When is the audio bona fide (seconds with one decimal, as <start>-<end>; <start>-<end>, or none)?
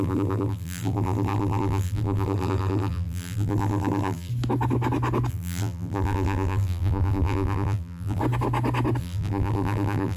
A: 4.3-5.3; 8.2-9.0